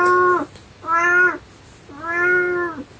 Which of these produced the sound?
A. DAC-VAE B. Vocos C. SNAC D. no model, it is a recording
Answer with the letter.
D